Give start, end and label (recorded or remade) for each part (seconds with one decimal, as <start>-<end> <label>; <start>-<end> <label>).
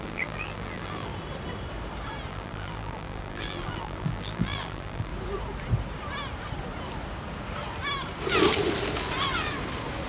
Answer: 0.0-1.1 remade; 1.1-2.3 recorded; 2.3-5.1 remade; 5.1-10.1 recorded